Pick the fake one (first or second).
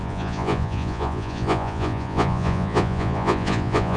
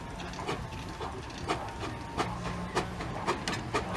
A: first